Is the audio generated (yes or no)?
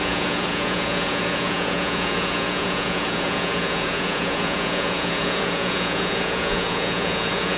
yes